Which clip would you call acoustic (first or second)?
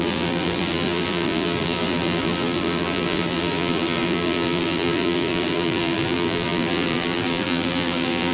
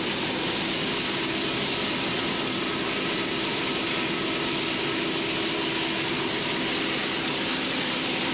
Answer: second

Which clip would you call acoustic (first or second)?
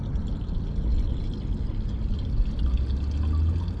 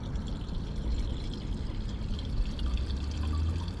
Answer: first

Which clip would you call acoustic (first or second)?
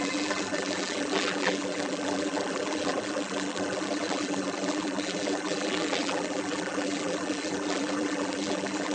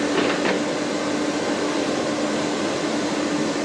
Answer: second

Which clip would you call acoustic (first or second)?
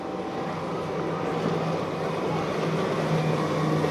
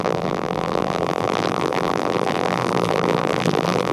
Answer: first